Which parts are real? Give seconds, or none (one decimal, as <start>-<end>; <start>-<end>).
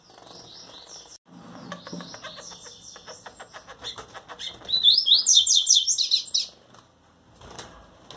0.0-5.3; 5.9-8.2